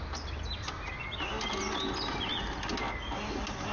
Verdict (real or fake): real